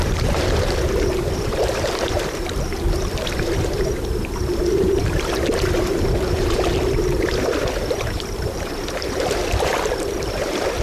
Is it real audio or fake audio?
fake